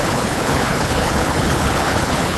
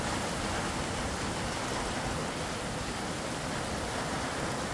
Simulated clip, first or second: first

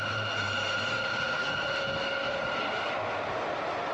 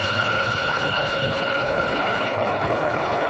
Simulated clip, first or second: second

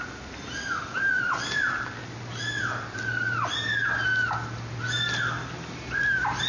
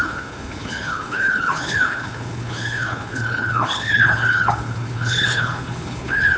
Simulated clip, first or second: second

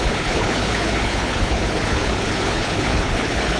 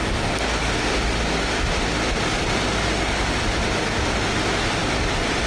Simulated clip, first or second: first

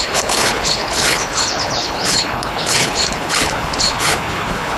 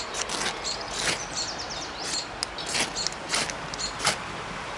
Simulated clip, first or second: first